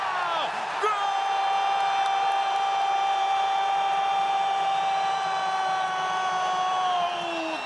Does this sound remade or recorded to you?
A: recorded